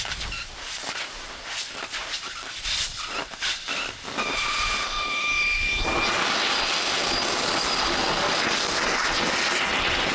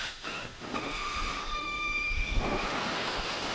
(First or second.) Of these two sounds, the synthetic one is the second